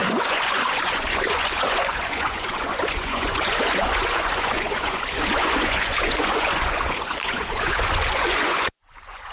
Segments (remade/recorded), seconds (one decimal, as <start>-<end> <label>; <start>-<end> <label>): 0.0-9.3 remade